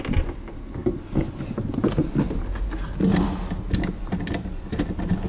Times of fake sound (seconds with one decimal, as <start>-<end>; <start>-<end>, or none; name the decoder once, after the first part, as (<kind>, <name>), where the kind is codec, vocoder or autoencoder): none